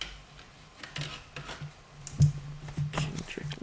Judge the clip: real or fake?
real